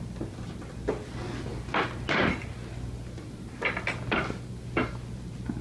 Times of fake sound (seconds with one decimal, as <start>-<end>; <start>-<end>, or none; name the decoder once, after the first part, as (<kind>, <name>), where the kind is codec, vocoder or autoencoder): none

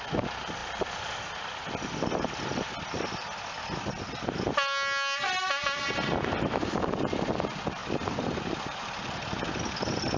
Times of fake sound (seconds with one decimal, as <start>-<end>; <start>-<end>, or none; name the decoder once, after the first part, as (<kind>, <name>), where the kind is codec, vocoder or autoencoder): none

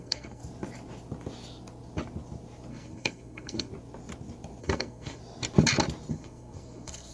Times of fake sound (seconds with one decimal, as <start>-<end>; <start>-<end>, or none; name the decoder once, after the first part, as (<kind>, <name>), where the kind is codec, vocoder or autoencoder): 0.0-0.4 (codec, SNAC); 2.7-3.7; 4.6-5.2; 6.1-7.1